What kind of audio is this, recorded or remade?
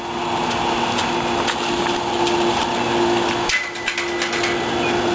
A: recorded